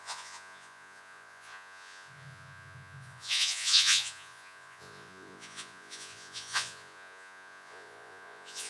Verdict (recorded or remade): remade